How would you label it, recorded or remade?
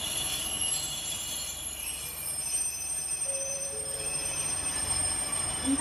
remade